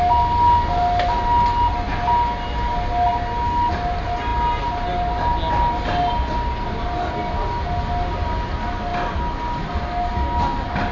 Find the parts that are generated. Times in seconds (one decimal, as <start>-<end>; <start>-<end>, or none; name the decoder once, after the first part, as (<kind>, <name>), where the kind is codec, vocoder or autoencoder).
none